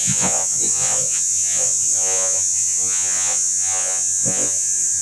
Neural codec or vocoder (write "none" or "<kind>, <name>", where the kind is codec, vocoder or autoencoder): vocoder, Vocos